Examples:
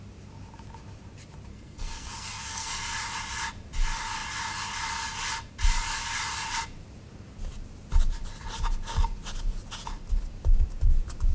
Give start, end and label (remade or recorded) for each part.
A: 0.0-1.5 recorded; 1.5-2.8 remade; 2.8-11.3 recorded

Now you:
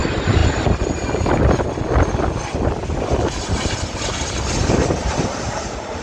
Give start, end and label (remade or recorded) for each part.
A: 0.0-6.0 recorded

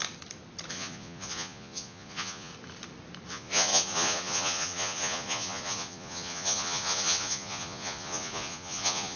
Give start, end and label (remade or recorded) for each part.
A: 0.0-0.7 recorded; 0.7-2.5 remade; 2.5-3.3 recorded; 3.3-9.2 remade

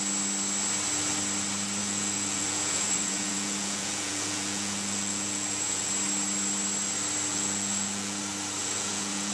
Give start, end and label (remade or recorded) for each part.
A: 0.0-1.8 recorded; 1.8-5.9 remade; 5.9-7.3 recorded; 7.3-8.2 remade; 8.2-8.6 recorded; 8.6-9.3 remade

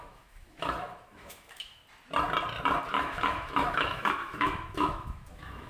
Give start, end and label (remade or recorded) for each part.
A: 0.0-1.8 remade; 1.8-2.9 recorded; 2.9-5.7 remade